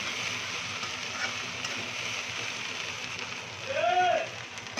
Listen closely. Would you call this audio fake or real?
real